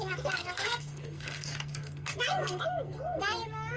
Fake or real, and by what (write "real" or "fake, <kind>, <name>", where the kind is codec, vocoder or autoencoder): fake, codec, SNAC